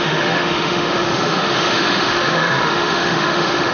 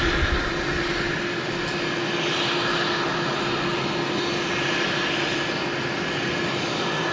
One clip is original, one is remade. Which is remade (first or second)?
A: first